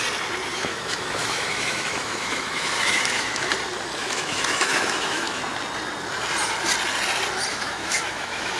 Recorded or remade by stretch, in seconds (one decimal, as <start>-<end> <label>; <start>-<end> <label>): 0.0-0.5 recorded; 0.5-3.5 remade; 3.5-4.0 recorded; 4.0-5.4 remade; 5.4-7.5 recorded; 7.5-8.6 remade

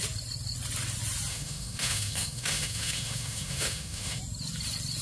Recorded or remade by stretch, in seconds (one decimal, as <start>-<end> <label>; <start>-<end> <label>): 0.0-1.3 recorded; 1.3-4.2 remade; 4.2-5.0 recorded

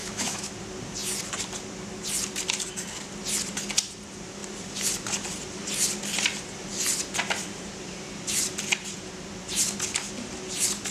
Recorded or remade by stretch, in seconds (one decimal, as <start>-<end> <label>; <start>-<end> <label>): 0.0-0.5 remade; 0.5-10.9 recorded